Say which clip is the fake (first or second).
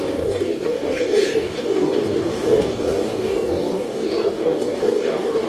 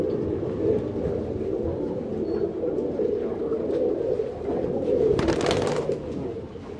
first